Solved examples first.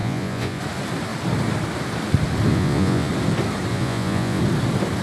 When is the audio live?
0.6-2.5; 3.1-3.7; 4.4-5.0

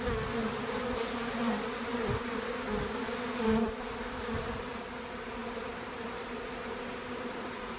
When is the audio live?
0.0-0.4; 4.8-5.4